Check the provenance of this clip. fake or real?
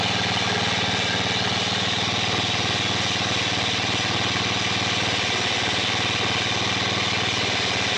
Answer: real